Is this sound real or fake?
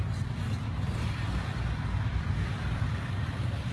fake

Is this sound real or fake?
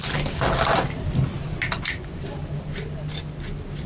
real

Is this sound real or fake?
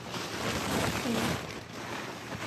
fake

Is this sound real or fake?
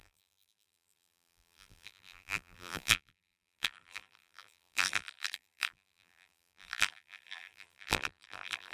fake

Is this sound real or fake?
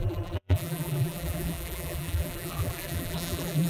fake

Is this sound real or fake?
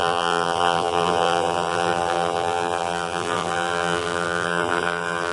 fake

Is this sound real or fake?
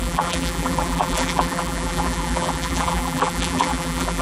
fake